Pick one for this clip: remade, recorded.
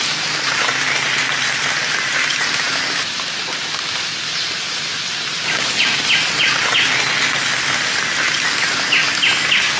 recorded